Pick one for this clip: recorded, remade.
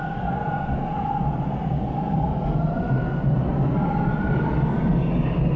recorded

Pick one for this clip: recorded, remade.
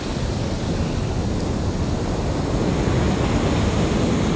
recorded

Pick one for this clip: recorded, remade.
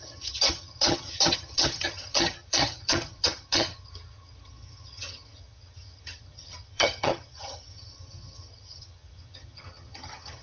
remade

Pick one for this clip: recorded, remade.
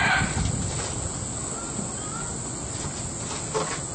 recorded